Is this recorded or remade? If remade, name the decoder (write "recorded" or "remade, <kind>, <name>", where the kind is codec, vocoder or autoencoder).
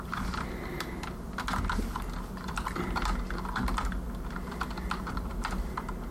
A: recorded